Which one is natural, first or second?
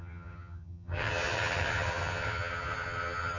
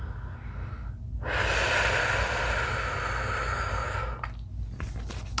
second